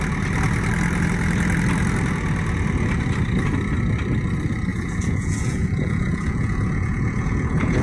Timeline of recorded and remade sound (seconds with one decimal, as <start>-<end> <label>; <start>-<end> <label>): 0.0-4.7 recorded; 4.7-7.8 remade